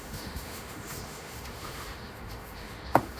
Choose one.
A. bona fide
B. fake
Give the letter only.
B